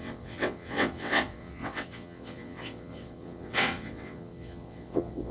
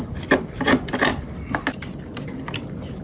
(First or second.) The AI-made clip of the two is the first